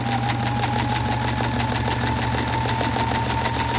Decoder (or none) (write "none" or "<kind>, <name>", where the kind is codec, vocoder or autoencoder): none